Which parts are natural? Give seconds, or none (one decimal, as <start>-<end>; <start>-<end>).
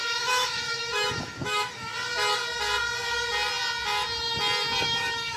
1.9-4.8